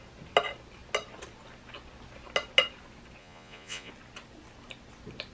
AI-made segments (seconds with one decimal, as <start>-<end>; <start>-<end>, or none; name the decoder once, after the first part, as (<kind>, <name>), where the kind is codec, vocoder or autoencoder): 3.2-3.9 (vocoder, Vocos)